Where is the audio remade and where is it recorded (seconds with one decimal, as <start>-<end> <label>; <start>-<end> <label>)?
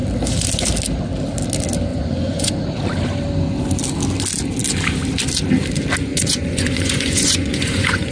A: 0.0-1.9 recorded; 1.9-2.5 remade; 2.5-6.1 recorded; 6.1-8.1 remade